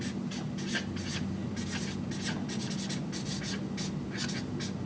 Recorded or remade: recorded